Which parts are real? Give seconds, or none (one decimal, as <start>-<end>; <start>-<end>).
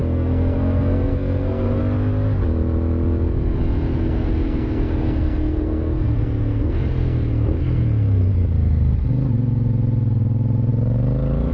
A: 1.8-3.9; 8.3-11.5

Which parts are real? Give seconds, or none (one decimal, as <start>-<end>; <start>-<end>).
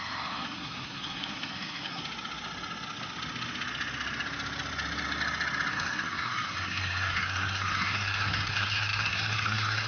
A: 2.0-5.7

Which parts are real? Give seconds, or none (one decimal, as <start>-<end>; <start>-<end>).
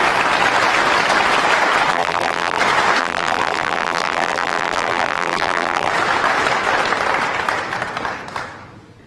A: 0.0-1.9; 2.6-3.0; 5.9-9.1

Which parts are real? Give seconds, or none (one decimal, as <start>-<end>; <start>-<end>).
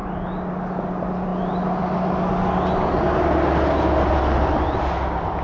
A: 0.0-5.4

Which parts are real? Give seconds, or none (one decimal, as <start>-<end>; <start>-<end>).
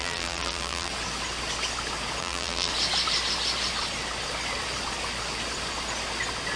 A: 0.9-2.2; 2.7-6.6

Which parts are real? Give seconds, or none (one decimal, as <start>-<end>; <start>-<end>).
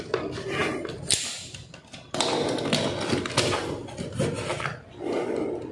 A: 0.0-5.7